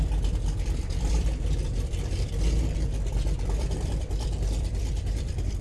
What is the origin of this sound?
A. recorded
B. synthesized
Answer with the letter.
B